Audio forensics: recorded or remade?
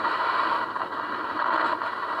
remade